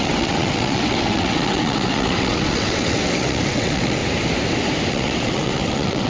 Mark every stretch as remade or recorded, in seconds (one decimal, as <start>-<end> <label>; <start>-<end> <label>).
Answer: 0.0-4.0 remade; 4.0-4.9 recorded; 4.9-6.1 remade